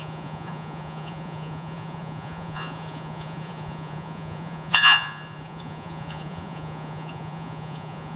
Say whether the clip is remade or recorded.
remade